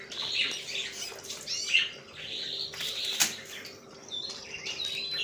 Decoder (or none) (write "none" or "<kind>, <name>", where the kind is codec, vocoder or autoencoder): none